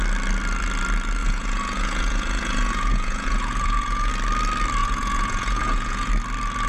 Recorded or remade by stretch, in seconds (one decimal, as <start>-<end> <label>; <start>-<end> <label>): 0.0-1.2 recorded; 1.2-4.1 remade; 4.1-4.8 recorded; 4.8-6.1 remade; 6.1-6.7 recorded